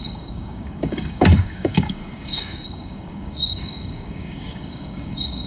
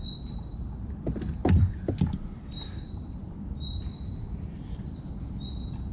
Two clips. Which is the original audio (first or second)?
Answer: second